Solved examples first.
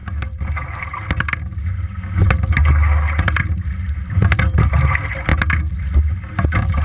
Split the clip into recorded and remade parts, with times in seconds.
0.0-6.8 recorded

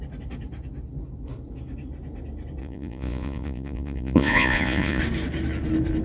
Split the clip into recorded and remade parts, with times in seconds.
0.0-2.6 recorded; 2.6-5.0 remade; 5.0-6.0 recorded

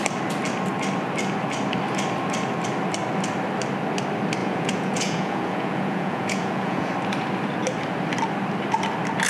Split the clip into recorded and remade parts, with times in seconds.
0.0-4.4 recorded; 4.4-6.9 remade; 6.9-9.3 recorded

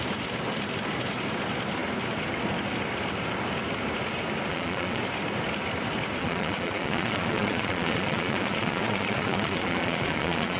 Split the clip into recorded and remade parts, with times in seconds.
0.0-4.5 recorded; 4.5-5.0 remade; 5.0-6.2 recorded; 6.2-10.6 remade

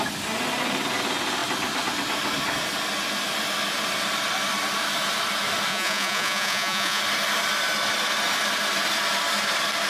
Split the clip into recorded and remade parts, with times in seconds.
0.0-5.7 recorded; 5.7-7.0 remade; 7.0-9.9 recorded

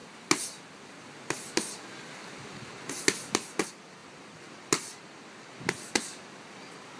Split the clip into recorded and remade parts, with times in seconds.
0.0-7.0 recorded

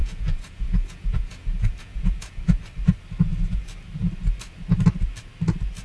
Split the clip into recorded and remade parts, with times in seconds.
0.0-2.4 remade; 2.4-5.8 recorded

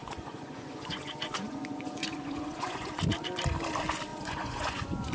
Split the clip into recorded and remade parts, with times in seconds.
0.0-3.0 remade; 3.0-4.1 recorded; 4.1-5.1 remade